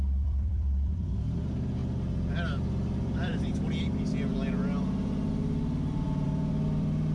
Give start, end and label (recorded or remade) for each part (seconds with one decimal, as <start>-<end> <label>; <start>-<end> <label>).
0.0-1.8 remade; 1.8-2.9 recorded; 2.9-3.5 remade; 3.5-5.9 recorded; 5.9-7.1 remade